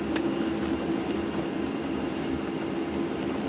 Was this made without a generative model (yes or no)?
yes